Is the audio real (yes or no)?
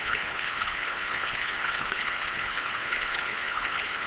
no